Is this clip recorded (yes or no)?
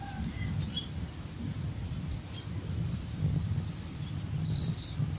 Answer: no